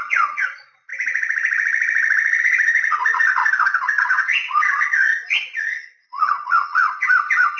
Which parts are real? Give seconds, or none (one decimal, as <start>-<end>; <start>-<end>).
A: 0.9-2.4; 3.4-4.0